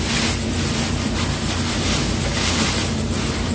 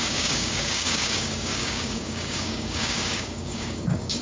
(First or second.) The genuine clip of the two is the first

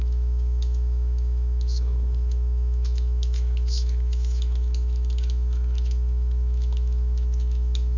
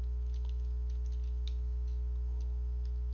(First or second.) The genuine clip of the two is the second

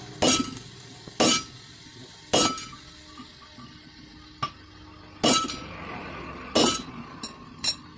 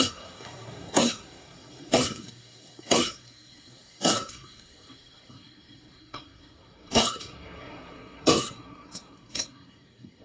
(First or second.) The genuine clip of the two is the first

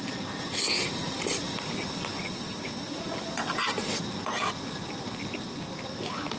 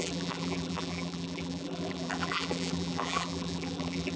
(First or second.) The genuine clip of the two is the first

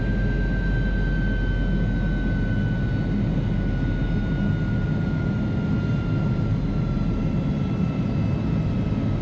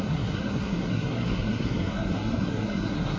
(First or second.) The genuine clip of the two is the first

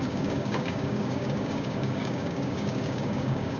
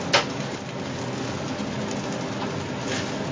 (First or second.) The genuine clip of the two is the second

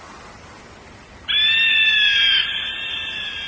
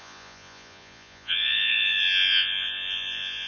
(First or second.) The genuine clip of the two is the first